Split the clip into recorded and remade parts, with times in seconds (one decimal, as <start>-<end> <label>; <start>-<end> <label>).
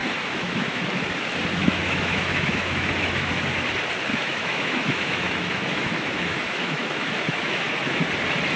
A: 0.0-0.8 remade; 0.8-1.6 recorded; 1.6-3.3 remade; 3.3-4.1 recorded; 4.1-8.0 remade; 8.0-8.6 recorded